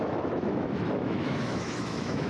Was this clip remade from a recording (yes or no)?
yes